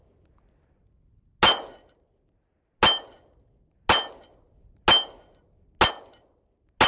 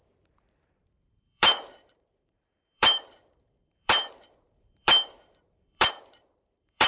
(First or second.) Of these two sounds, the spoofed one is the second